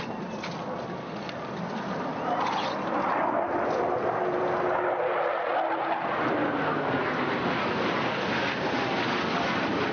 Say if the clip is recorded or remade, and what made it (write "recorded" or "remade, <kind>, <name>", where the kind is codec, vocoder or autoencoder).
recorded